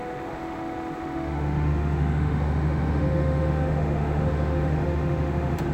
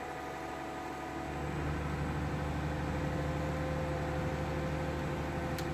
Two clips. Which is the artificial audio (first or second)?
first